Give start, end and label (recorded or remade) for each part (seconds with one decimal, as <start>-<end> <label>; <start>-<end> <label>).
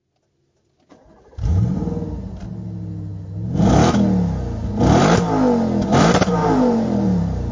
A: 0.0-0.9 recorded; 0.9-1.9 remade; 1.9-6.4 recorded; 6.4-7.5 remade